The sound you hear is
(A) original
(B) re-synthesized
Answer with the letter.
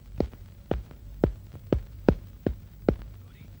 B